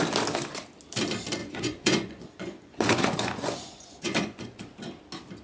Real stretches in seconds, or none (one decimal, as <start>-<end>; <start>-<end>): 0.0-1.4; 4.6-5.4